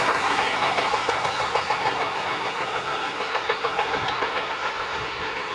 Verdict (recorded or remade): remade